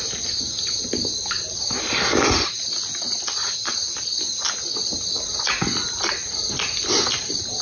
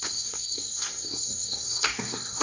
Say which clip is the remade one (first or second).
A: second